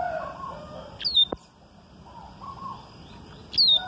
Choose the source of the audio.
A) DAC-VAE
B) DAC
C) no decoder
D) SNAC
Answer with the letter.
C